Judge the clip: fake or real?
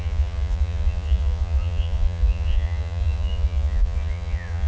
fake